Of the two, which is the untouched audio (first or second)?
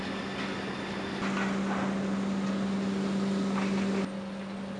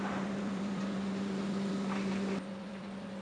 first